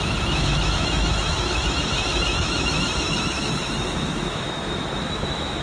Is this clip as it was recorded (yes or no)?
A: no